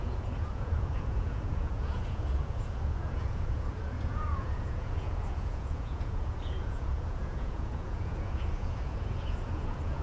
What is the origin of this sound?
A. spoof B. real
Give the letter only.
A